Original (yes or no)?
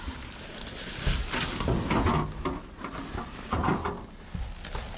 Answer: yes